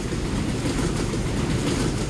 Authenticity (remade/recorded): recorded